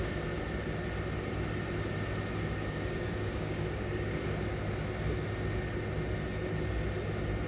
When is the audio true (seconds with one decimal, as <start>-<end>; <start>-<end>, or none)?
0.0-2.6; 4.3-7.5